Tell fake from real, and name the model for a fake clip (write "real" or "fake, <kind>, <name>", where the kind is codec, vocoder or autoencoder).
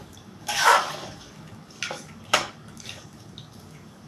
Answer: fake, codec, DAC